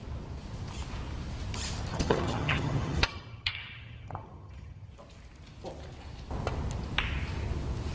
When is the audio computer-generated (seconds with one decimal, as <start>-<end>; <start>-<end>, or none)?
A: 1.9-4.9